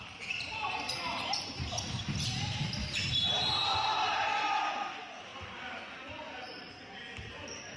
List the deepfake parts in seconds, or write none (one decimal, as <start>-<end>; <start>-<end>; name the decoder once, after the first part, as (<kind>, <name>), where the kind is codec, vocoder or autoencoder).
2.8-4.6 (vocoder, BigVGAN v2); 5.3-6.7